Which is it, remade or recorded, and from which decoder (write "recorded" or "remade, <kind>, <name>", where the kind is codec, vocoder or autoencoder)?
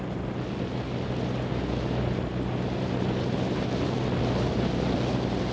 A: recorded